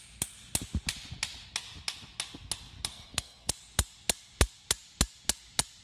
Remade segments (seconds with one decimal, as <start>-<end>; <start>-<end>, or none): 2.9-3.5